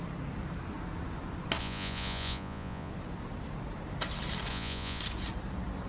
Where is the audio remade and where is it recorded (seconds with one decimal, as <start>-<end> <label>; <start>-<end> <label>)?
0.0-1.6 recorded; 1.6-2.9 remade; 2.9-4.5 recorded; 4.5-5.0 remade; 5.0-5.9 recorded